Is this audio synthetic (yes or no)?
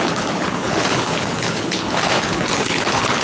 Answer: yes